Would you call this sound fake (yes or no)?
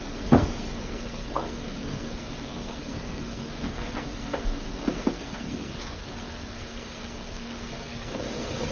yes